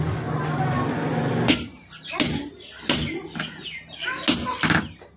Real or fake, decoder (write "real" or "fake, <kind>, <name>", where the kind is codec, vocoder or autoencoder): real